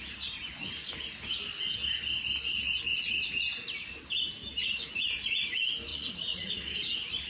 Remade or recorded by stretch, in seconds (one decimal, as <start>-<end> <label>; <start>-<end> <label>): 0.0-5.9 recorded; 5.9-6.5 remade; 6.5-7.3 recorded